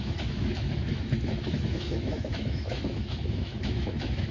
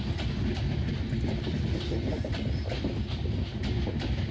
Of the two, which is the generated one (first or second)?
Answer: first